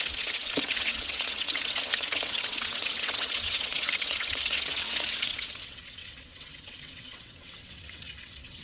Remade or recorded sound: remade